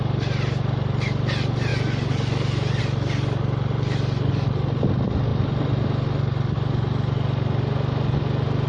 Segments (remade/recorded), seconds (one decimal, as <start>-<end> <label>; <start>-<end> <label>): 0.0-8.7 recorded